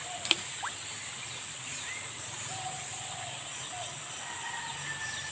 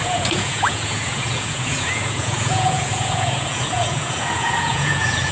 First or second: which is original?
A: first